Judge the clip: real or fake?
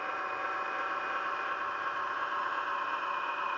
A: fake